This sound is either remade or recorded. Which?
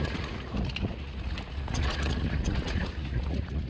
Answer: remade